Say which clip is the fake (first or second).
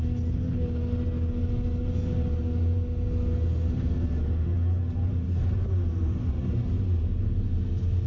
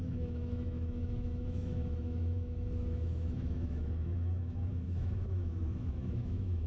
second